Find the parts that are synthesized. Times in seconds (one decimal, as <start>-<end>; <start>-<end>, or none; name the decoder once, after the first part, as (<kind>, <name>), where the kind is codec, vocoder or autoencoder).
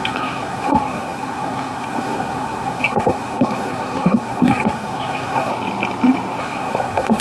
0.0-5.5 (codec, SNAC); 6.4-7.2